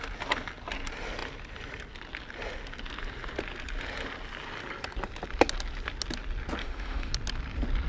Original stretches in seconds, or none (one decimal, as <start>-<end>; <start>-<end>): 0.0-6.6; 7.1-7.9